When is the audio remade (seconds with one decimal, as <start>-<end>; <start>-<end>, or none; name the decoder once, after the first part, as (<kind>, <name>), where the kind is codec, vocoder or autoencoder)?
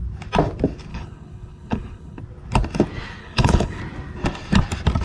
0.9-2.2 (codec, HILCodec); 3.2-3.8